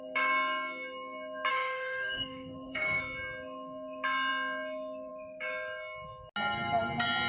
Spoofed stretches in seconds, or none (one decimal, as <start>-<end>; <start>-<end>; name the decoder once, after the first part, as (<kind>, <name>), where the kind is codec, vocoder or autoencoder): 1.5-3.0 (autoencoder, DAC-VAE)